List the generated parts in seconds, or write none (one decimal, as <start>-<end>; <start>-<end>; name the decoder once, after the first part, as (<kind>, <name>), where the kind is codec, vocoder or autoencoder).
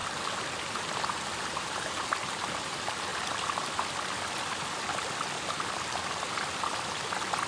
1.4-3.1 (vocoder, BigVGAN v2)